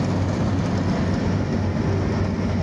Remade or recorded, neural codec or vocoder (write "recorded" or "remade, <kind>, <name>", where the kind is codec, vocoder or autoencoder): recorded